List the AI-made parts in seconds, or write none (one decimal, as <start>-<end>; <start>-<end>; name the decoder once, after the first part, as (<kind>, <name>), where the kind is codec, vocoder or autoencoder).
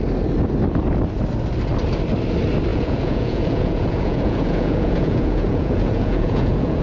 2.7-6.8 (vocoder, Vocos)